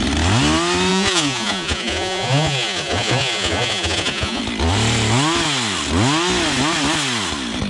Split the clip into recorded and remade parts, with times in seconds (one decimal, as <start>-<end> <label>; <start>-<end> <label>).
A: 0.0-0.9 recorded; 0.9-4.4 remade; 4.4-7.7 recorded